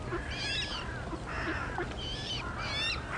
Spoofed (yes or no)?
no